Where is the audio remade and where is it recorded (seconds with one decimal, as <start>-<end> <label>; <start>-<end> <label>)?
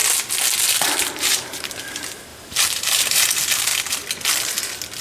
0.0-0.8 recorded; 0.8-3.7 remade; 3.7-5.0 recorded